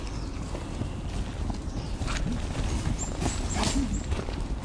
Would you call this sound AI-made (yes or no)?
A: no